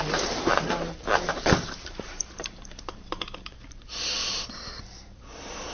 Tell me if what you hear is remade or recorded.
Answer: remade